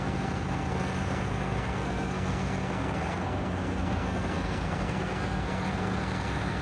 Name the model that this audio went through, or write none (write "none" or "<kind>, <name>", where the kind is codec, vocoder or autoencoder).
codec, SNAC